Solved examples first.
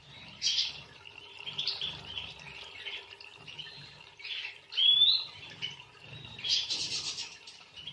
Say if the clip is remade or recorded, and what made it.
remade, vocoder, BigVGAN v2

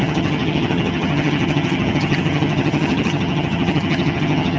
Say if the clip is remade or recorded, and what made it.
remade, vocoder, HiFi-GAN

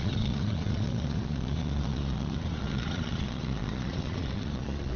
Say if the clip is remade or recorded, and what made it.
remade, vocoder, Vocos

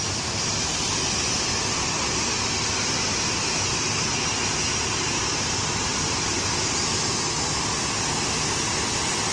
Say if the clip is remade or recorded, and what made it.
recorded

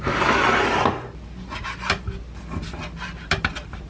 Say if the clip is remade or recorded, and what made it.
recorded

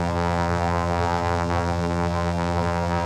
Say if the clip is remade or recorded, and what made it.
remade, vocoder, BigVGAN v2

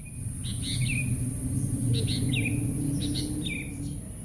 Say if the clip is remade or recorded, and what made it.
recorded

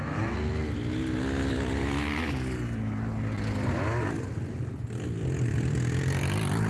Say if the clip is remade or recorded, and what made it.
recorded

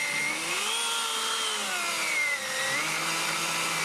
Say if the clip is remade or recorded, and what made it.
recorded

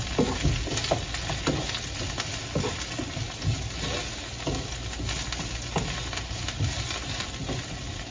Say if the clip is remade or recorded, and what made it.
recorded